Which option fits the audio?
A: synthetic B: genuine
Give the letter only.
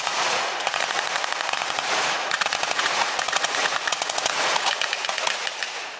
A